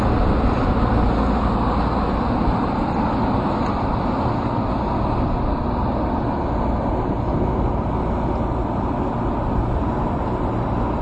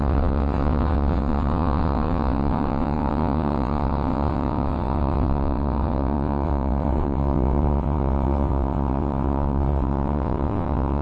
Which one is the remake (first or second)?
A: second